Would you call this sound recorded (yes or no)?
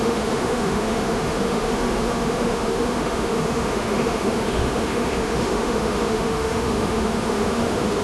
no